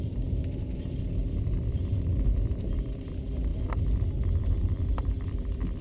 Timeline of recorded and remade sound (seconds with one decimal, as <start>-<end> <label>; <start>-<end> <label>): 0.0-3.5 remade; 3.5-4.1 recorded; 4.1-5.8 remade

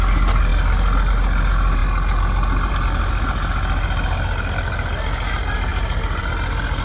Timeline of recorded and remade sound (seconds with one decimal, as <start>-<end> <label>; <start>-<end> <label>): 0.0-6.8 recorded

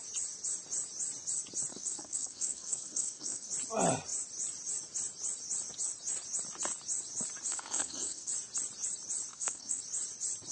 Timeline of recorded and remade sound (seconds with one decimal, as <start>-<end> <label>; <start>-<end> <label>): 0.0-1.7 recorded; 1.7-3.5 remade; 3.5-7.5 recorded; 7.5-8.3 remade; 8.3-9.3 recorded; 9.3-9.8 remade; 9.8-10.5 recorded